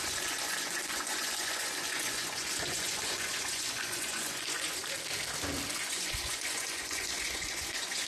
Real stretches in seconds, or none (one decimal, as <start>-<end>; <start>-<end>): 4.8-5.7